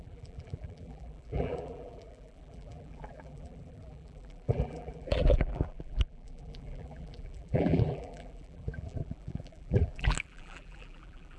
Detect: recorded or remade remade